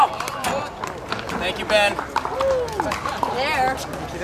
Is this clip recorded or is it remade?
recorded